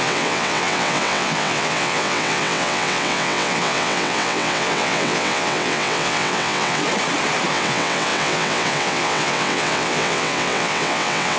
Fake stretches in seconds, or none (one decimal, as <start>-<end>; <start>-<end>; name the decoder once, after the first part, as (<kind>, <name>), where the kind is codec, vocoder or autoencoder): 0.0-6.8 (vocoder, WaveNeXt); 7.5-11.4